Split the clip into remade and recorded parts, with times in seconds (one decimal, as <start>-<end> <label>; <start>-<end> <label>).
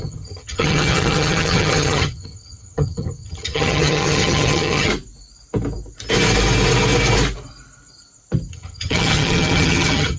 0.0-4.9 remade; 4.9-8.5 recorded; 8.5-10.2 remade